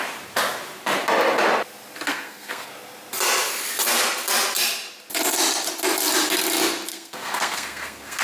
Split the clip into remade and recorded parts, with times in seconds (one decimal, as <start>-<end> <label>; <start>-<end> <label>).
0.0-2.1 recorded; 2.1-2.7 remade; 2.7-6.9 recorded; 6.9-8.2 remade